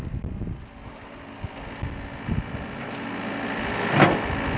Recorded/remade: recorded